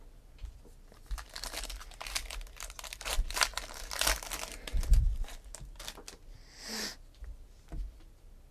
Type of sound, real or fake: real